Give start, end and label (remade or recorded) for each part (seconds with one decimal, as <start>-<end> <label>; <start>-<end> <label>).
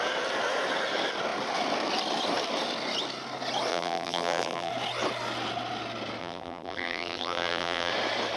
0.0-3.7 recorded; 3.7-4.7 remade; 4.7-6.2 recorded; 6.2-7.9 remade; 7.9-8.4 recorded